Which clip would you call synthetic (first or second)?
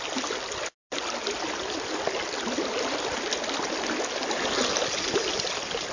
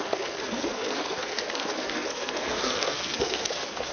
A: second